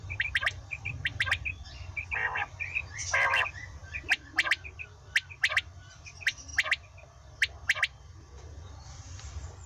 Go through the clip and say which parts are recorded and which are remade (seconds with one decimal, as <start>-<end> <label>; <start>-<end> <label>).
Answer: 0.0-3.8 remade; 3.8-5.6 recorded; 5.6-6.5 remade; 6.5-8.0 recorded; 8.0-9.7 remade